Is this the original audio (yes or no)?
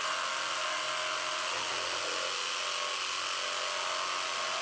yes